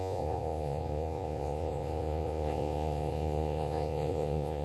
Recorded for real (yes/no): no